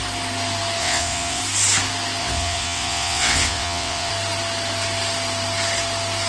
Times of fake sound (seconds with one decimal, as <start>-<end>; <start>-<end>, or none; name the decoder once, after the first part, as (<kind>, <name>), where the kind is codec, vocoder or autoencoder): 0.8-1.4 (vocoder, WaveNeXt); 2.2-4.1